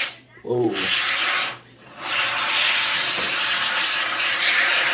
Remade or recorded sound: remade